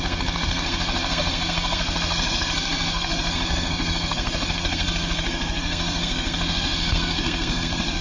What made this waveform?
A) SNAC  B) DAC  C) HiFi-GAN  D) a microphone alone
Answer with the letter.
A